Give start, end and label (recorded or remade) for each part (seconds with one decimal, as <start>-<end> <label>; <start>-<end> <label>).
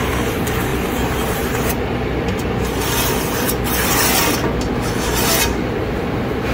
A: 0.0-6.5 recorded